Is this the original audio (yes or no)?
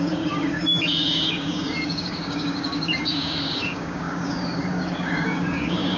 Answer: no